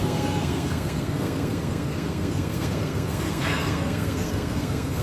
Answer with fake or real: fake